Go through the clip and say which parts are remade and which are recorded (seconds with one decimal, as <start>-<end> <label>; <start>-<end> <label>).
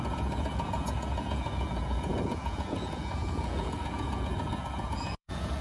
0.0-5.6 remade